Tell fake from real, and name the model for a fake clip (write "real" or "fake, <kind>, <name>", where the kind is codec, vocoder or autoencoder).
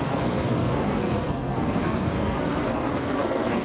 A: fake, codec, SNAC